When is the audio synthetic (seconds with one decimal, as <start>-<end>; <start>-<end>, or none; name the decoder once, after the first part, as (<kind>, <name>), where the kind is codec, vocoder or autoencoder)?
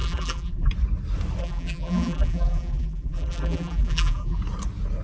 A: 0.0-0.7 (vocoder, BigVGAN v2); 1.4-4.4